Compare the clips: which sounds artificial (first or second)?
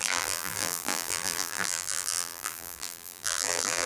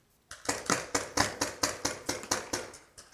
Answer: first